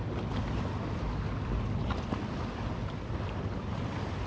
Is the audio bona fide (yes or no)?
yes